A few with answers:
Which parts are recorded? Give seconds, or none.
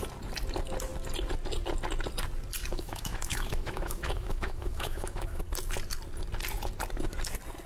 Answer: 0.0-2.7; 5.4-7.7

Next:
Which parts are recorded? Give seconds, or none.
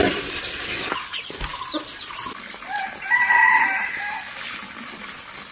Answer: 0.0-5.5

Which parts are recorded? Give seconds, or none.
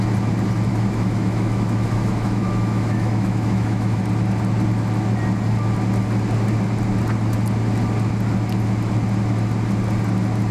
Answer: 0.0-0.7; 4.0-10.5